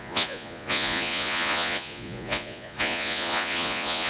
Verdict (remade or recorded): remade